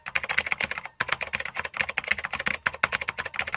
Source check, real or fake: real